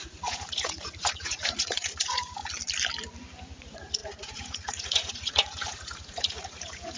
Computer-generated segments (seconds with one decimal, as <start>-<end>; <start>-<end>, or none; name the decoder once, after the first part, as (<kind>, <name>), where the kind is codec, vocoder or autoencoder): 0.0-2.4 (vocoder, Vocos); 3.6-7.0

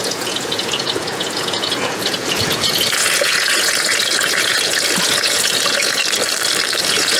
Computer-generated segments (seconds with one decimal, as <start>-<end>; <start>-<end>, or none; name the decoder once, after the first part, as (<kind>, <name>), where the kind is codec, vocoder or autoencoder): 0.0-6.0 (vocoder, Vocos); 6.8-7.2

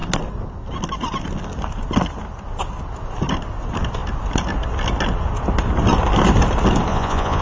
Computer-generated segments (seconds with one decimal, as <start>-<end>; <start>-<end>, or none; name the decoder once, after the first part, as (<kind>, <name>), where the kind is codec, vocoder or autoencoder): 6.9-7.4 (vocoder, Vocos)

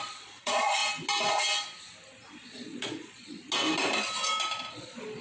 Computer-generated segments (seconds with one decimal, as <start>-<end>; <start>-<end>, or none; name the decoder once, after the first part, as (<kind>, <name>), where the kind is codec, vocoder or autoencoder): 0.0-0.8 (vocoder, Vocos); 2.3-3.4; 4.7-5.2

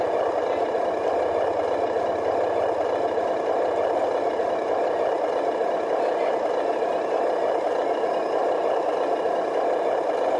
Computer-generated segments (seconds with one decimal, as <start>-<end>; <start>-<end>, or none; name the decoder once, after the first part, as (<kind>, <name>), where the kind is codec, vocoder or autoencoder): none